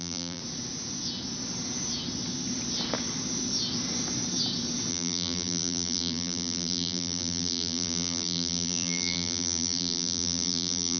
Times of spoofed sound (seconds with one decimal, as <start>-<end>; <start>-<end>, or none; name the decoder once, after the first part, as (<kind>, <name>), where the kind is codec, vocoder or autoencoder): 0.0-0.4 (vocoder, BigVGAN v2); 4.9-11.0